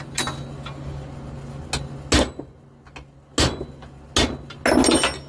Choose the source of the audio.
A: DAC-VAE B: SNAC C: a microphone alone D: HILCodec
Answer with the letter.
C